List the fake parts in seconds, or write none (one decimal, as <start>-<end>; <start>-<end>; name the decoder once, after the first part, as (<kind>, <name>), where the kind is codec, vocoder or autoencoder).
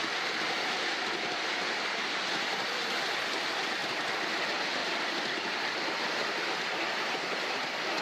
4.8-5.8 (vocoder, BigVGAN v2)